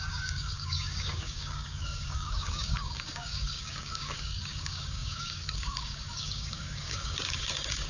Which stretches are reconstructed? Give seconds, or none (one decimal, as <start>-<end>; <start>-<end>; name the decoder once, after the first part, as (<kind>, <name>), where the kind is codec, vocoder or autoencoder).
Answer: 0.0-7.9 (codec, DAC)